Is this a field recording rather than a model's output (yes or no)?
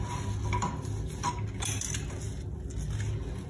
yes